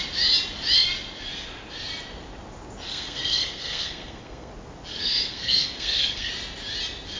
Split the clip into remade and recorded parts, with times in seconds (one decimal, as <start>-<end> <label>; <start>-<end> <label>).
0.0-2.9 recorded; 2.9-4.5 remade; 4.5-4.9 recorded; 4.9-6.3 remade; 6.3-7.2 recorded